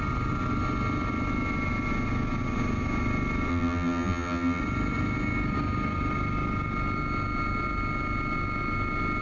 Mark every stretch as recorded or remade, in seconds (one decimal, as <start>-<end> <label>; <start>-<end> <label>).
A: 0.0-3.5 recorded; 3.5-4.6 remade; 4.6-9.2 recorded